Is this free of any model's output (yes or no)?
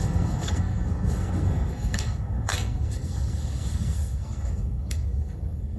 no